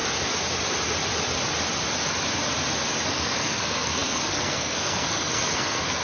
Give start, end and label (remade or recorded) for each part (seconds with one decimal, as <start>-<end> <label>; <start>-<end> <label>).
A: 0.0-3.1 recorded; 3.1-6.0 remade